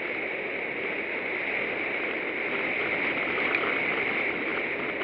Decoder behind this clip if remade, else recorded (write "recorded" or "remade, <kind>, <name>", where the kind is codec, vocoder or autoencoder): recorded